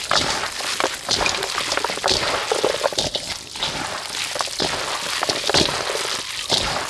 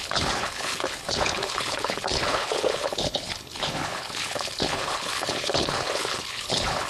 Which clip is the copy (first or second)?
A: second